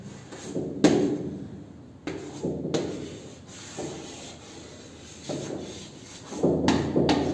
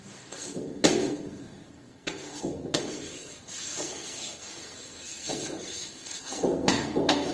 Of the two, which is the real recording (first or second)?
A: first